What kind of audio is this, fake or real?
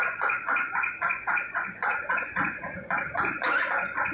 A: fake